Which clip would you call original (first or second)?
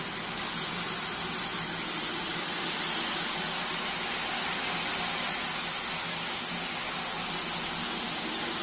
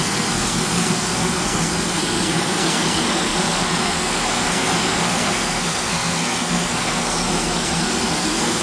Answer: first